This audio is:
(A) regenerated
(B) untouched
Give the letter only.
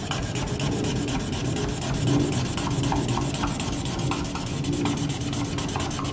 B